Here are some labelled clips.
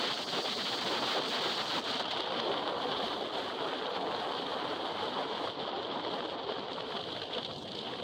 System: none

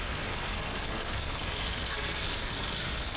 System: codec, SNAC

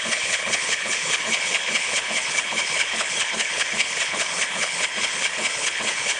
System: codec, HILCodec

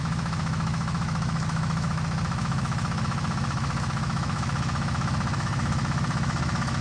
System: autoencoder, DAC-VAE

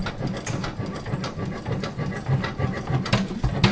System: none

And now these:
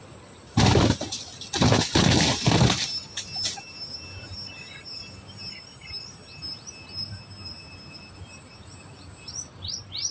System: none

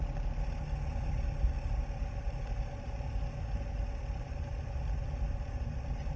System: none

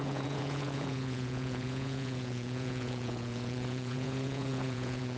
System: vocoder, Vocos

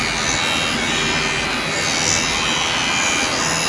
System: none